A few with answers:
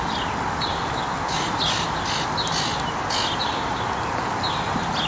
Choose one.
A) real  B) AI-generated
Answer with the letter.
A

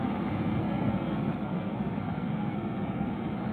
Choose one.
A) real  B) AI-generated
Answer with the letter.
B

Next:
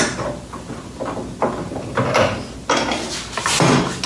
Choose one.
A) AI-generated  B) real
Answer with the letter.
B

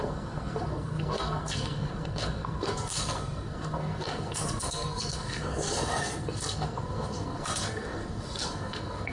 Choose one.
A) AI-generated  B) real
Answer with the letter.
A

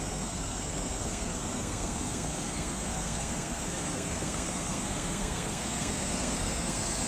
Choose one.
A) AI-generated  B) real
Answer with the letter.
A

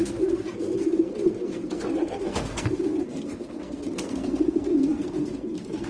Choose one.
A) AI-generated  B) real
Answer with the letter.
A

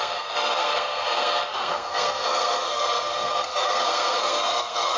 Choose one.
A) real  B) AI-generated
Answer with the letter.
B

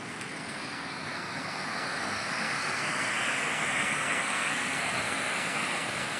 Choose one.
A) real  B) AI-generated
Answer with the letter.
B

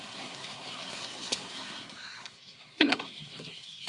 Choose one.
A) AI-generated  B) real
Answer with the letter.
A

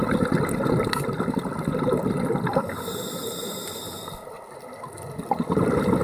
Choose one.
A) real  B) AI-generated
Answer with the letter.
A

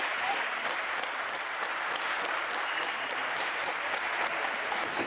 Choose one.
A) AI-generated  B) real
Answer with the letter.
B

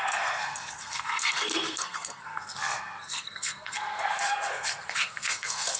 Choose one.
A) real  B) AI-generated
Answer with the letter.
B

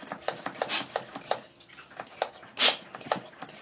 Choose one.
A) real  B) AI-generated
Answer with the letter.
A